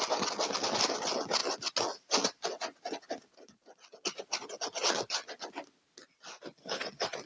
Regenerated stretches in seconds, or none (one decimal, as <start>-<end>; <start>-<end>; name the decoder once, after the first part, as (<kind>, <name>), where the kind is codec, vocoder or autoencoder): none